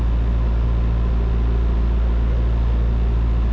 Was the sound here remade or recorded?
recorded